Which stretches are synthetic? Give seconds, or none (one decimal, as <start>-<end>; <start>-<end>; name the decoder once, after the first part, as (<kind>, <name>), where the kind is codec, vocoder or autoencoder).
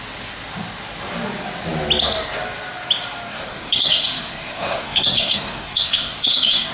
3.3-6.7 (codec, SNAC)